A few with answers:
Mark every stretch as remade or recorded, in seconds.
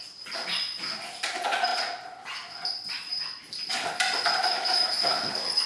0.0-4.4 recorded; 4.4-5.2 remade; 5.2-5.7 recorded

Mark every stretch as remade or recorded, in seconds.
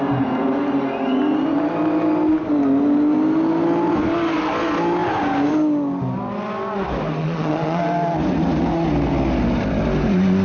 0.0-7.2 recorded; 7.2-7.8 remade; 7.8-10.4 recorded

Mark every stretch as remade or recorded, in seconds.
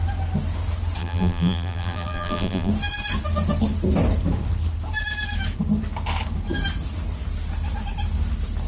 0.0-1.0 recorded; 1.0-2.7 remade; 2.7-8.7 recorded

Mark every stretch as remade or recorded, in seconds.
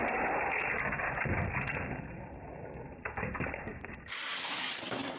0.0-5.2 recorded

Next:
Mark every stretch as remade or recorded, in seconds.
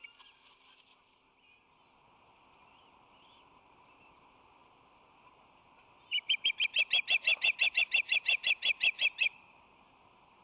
0.0-10.4 recorded